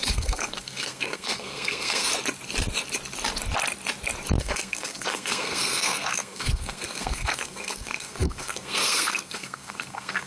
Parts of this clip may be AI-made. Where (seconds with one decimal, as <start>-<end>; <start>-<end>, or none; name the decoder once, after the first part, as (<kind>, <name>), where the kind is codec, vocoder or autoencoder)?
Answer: 0.0-2.1 (codec, SNAC); 4.4-10.3